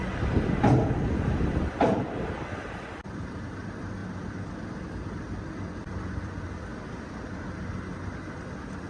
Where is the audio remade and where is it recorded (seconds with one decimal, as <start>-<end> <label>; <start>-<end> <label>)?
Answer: 0.0-4.0 remade; 4.0-5.2 recorded; 5.2-6.7 remade; 6.7-7.7 recorded; 7.7-8.9 remade